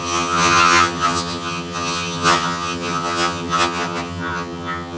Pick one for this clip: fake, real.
fake